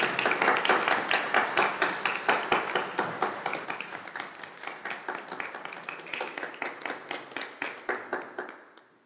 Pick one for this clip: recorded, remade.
recorded